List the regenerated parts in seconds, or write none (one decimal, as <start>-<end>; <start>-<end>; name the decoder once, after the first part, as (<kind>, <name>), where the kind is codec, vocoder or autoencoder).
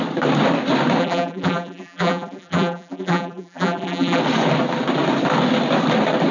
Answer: 1.0-4.2 (vocoder, BigVGAN v2)